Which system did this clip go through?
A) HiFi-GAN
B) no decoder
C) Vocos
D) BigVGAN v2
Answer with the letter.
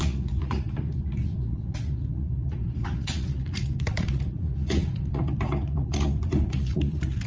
C